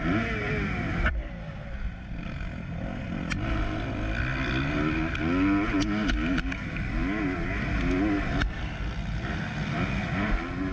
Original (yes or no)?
yes